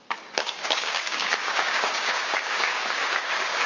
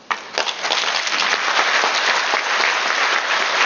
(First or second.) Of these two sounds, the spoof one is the first